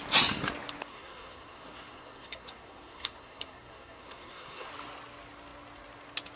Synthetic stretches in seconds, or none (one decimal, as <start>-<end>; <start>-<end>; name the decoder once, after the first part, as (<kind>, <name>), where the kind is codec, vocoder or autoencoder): 0.9-4.7 (codec, SNAC)